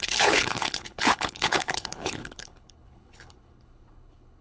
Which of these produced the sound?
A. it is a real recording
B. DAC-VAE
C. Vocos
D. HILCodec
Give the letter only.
D